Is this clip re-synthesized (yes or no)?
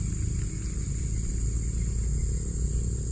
no